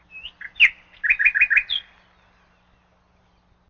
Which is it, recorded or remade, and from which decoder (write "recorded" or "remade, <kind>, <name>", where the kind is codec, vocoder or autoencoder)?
recorded